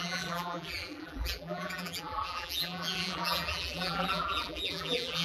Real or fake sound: fake